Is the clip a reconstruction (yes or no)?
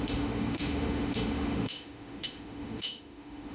yes